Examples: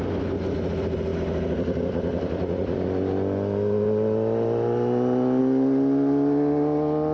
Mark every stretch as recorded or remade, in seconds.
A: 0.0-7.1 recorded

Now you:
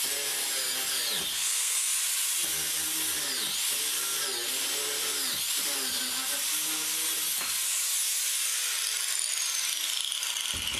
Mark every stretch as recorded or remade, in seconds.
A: 0.0-1.3 recorded; 1.3-1.9 remade; 1.9-10.8 recorded

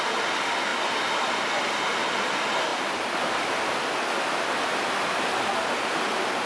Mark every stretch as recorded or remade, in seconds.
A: 0.0-6.5 recorded